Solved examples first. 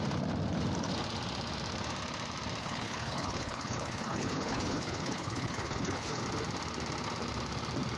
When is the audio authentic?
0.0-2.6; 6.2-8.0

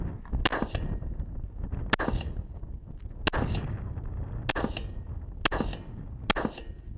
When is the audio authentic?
0.0-7.0

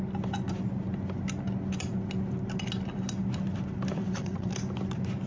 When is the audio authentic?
0.0-4.0; 4.5-5.3

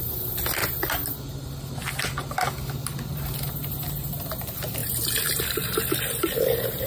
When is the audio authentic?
0.0-4.8; 5.4-6.9

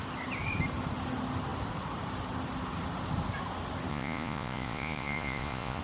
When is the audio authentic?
0.0-3.9

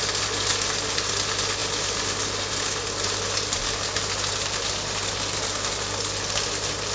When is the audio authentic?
0.0-6.9

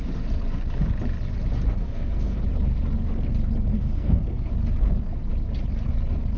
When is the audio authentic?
0.0-1.8; 2.4-3.7; 4.5-6.4

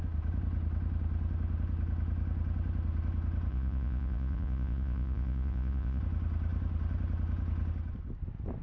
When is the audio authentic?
0.0-3.5; 6.0-8.6